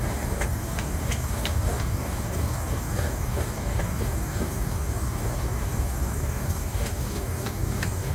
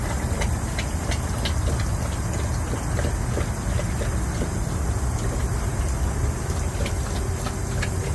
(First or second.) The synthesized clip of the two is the first